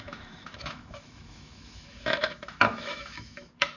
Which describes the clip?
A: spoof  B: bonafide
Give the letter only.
A